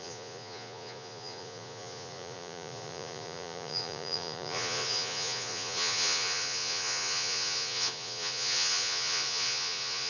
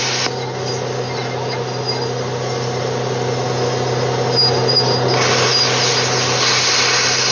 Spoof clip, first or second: first